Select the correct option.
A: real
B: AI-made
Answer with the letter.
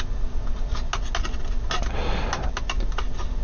A